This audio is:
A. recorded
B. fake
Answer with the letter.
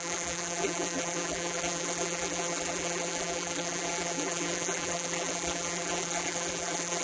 B